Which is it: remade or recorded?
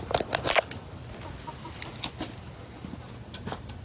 recorded